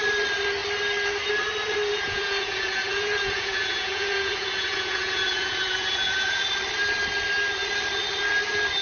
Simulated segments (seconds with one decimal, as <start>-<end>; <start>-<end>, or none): 1.9-6.4